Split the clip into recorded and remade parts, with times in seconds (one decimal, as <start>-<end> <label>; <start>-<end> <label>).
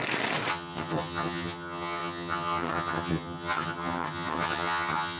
0.0-0.5 recorded; 0.5-5.2 remade